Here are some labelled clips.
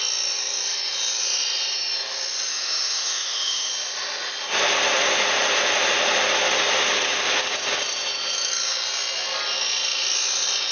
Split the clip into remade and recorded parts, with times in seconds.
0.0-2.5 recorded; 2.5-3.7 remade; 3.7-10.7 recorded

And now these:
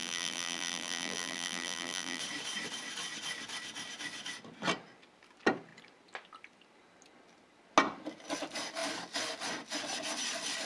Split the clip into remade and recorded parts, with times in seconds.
0.0-2.2 remade; 2.2-10.7 recorded

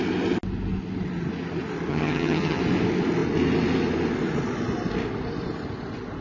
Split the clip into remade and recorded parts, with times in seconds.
0.0-1.9 recorded; 1.9-2.6 remade; 2.6-6.2 recorded